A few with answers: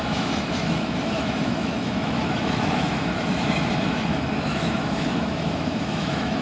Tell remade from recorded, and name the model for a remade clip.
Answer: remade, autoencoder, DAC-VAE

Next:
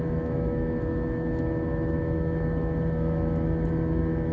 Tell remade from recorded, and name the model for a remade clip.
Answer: remade, autoencoder, DAC-VAE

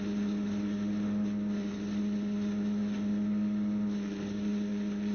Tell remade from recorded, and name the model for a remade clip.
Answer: recorded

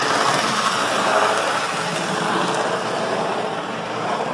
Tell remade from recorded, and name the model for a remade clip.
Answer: recorded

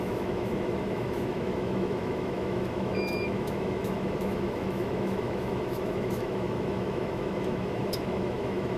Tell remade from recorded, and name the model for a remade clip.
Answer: remade, autoencoder, DAC-VAE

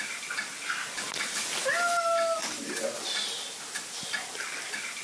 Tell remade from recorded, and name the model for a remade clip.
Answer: recorded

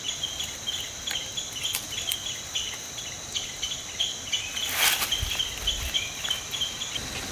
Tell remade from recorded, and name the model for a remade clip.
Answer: recorded